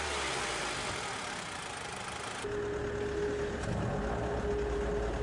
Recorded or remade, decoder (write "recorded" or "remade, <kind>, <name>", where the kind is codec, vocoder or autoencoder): recorded